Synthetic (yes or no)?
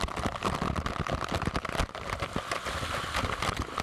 no